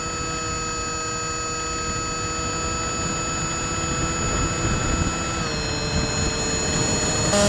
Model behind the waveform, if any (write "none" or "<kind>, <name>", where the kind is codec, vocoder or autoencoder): none